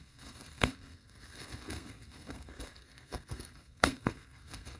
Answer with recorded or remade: remade